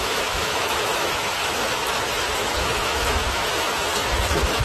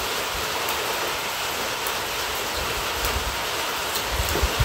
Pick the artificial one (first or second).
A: first